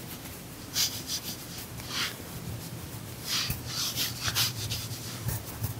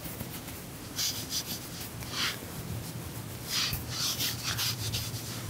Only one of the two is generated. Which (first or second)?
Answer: first